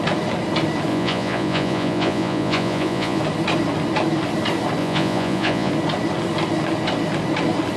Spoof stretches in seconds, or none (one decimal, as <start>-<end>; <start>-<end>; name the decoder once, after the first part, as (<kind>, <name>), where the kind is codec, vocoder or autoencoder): 0.9-3.2 (vocoder, Vocos); 4.8-5.7